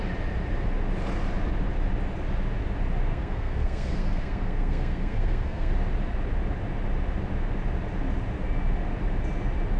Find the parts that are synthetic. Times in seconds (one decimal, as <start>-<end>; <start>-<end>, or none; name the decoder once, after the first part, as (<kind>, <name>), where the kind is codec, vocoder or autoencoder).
3.1-5.7 (codec, SNAC)